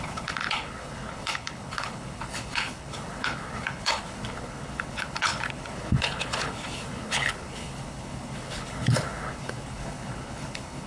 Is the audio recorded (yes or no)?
no